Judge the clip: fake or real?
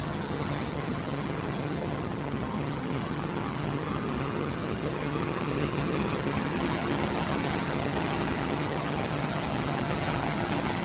fake